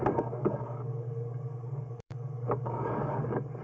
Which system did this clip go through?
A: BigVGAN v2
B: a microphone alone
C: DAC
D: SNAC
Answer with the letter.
C